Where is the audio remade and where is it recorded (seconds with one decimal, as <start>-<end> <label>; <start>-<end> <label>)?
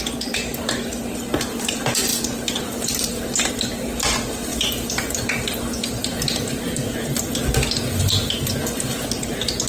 0.0-9.7 recorded